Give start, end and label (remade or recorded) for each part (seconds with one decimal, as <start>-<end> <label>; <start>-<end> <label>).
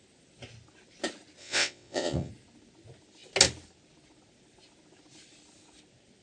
0.0-1.4 recorded; 1.4-2.3 remade; 2.3-6.2 recorded